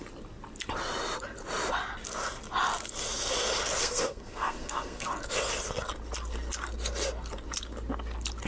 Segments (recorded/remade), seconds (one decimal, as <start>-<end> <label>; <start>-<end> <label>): 0.0-3.8 recorded; 3.8-5.1 remade; 5.1-8.5 recorded